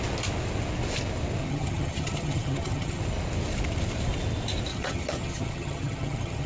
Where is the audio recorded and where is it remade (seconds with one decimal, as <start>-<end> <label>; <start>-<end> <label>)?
0.0-1.4 recorded; 1.4-3.0 remade; 3.0-4.7 recorded; 4.7-6.5 remade